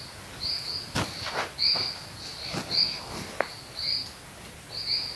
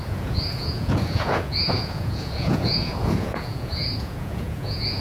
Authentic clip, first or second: first